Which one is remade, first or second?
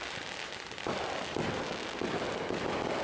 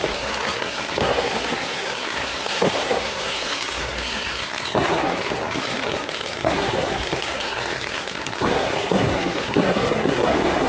second